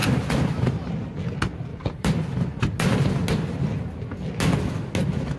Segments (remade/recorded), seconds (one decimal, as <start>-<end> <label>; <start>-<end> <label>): 0.0-0.9 remade; 0.9-5.4 recorded